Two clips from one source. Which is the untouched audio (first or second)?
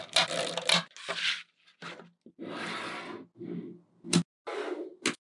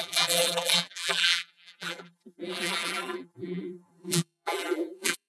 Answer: first